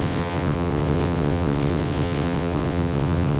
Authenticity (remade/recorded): remade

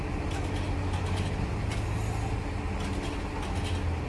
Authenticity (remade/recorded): recorded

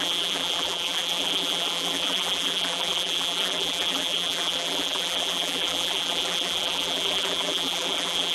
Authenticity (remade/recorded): remade